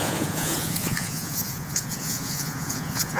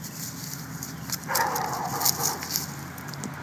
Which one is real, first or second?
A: second